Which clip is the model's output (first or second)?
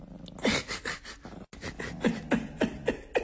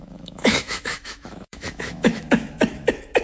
second